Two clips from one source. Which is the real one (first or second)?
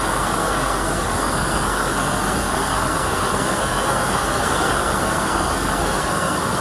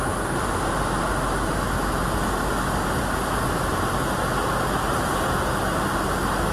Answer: second